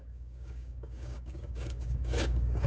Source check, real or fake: fake